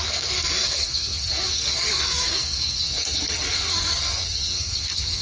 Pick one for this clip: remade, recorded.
remade